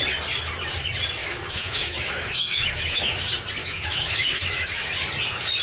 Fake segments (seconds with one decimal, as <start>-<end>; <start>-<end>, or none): 1.2-3.2; 3.6-4.9